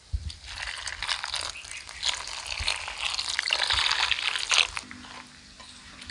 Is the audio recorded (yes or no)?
yes